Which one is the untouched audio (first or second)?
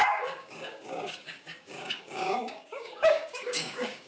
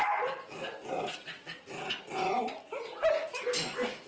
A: second